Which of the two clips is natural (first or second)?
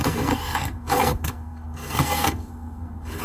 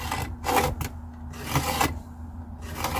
second